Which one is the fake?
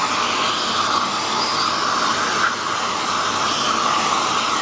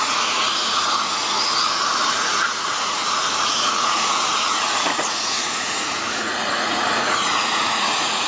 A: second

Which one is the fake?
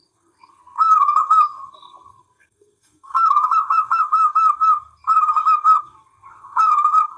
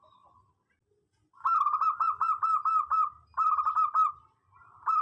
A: first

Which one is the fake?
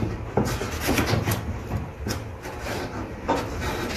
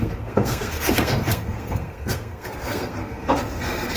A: second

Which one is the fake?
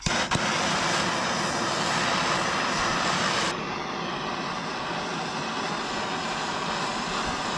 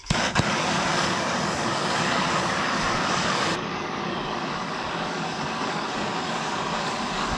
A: second